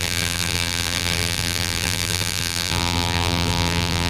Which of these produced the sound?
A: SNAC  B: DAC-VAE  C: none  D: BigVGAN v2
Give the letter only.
D